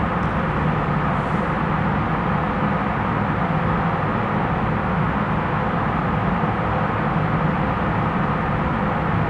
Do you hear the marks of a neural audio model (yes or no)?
no